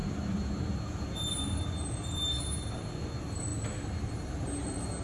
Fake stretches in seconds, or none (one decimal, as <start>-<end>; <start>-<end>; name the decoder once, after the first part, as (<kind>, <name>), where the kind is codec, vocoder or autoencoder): none